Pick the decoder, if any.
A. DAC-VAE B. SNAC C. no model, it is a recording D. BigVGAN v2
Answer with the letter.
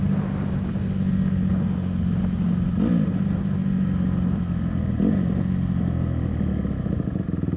C